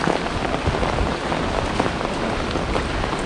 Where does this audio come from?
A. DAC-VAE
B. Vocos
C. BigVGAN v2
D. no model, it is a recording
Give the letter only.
D